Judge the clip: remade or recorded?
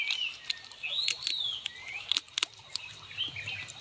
recorded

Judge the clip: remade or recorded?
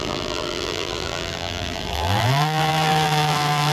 remade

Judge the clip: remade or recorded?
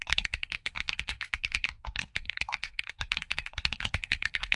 remade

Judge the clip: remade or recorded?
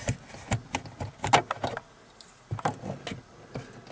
recorded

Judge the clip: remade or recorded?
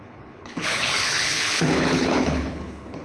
remade